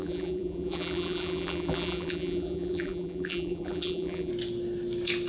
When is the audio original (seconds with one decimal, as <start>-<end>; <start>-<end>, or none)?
4.3-5.3